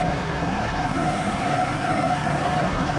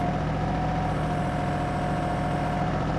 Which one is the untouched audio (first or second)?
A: second